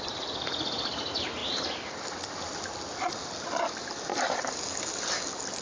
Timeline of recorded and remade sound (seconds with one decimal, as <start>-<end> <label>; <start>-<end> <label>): 0.0-1.4 recorded; 1.4-3.6 remade; 3.6-4.1 recorded; 4.1-4.8 remade; 4.8-5.6 recorded